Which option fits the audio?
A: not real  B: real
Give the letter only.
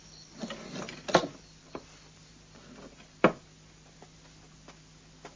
B